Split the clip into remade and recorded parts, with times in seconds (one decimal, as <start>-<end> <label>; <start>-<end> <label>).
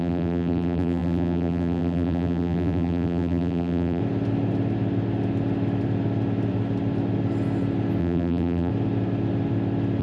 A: 0.0-4.0 remade; 4.0-8.0 recorded; 8.0-8.7 remade; 8.7-10.0 recorded